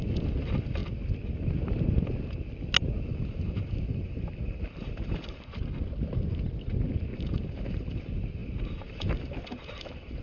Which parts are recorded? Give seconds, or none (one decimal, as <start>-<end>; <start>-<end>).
0.0-3.1; 5.4-7.1; 8.0-8.4